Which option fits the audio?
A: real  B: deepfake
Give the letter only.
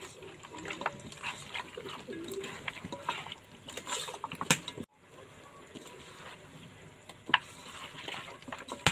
A